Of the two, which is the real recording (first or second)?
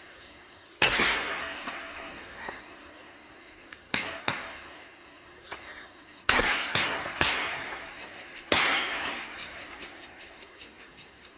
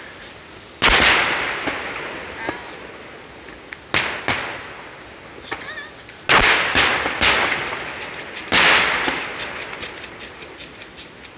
second